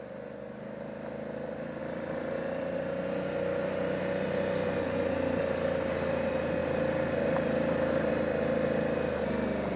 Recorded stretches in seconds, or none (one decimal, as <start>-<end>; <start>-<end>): 0.0-9.8